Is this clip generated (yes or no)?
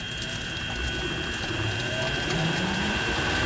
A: yes